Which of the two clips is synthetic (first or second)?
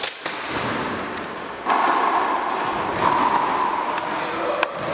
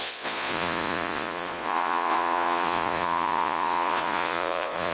second